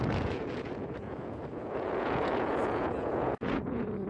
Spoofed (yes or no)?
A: yes